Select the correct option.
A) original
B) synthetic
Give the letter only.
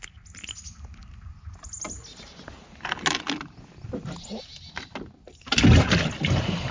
A